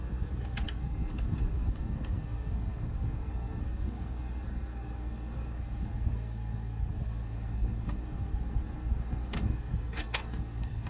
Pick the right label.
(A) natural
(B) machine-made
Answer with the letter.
B